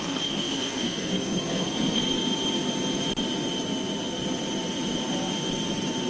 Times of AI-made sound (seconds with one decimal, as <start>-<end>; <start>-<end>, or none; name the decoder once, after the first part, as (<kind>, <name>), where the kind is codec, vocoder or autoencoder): 0.0-2.0 (codec, SNAC)